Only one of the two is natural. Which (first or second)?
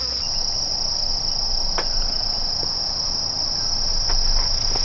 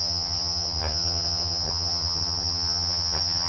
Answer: first